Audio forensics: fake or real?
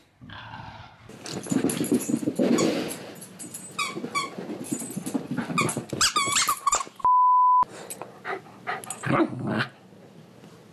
real